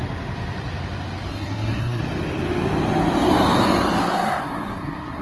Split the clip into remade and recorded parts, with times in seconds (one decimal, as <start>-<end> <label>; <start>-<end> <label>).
0.0-1.3 recorded; 1.3-2.0 remade; 2.0-4.0 recorded; 4.0-5.2 remade